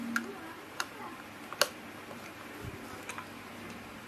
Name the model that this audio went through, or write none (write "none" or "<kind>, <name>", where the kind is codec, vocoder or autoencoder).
none